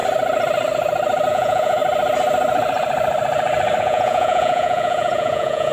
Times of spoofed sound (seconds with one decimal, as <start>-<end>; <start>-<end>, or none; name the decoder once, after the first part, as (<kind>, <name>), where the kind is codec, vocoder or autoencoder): 1.3-1.8 (vocoder, Vocos); 3.8-5.7